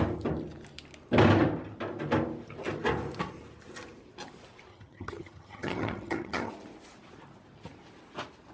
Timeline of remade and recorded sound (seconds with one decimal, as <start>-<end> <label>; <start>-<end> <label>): 0.0-4.7 recorded; 4.7-6.5 remade; 6.5-8.5 recorded